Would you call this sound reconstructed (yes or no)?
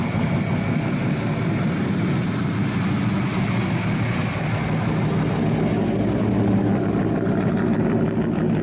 no